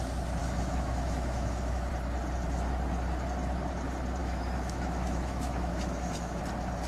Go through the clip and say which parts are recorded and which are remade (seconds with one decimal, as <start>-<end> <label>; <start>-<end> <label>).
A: 0.0-0.4 recorded; 0.4-1.9 remade; 1.9-4.2 recorded; 4.2-6.4 remade; 6.4-6.9 recorded